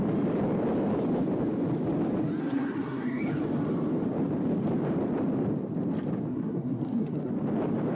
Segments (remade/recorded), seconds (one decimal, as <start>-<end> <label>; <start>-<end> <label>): 0.0-2.4 recorded; 2.4-3.2 remade; 3.2-6.3 recorded; 6.3-7.3 remade; 7.3-7.9 recorded